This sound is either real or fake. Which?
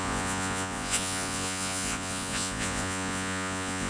fake